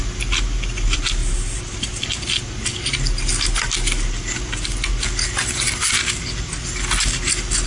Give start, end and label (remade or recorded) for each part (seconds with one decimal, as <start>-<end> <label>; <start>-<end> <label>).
0.0-7.7 recorded